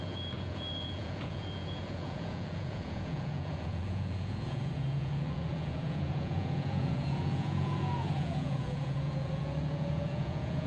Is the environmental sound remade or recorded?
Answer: remade